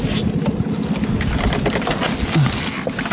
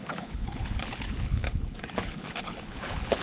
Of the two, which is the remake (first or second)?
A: second